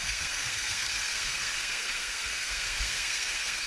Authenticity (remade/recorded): remade